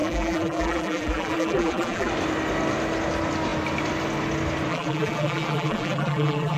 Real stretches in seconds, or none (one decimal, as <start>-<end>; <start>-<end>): 2.1-4.7